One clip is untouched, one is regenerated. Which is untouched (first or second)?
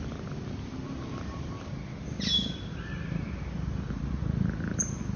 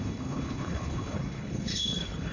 first